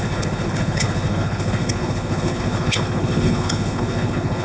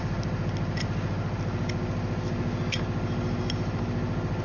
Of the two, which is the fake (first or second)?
first